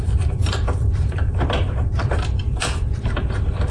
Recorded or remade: remade